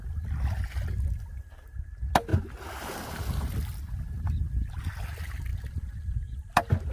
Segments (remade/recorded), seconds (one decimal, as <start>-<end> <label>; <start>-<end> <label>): 0.0-6.9 recorded